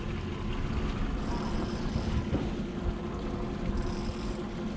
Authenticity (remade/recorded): recorded